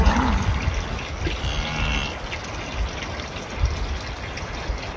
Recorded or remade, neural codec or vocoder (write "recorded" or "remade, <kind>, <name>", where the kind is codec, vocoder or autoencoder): recorded